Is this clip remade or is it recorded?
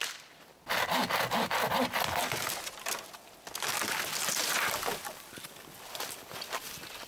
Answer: recorded